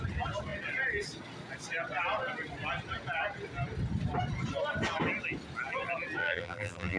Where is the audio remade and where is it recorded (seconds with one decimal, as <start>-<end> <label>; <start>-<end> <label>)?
0.0-6.2 recorded; 6.2-7.0 remade